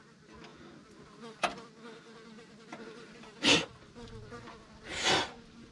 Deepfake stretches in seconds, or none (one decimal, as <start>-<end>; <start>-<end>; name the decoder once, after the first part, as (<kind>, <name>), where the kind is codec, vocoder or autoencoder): none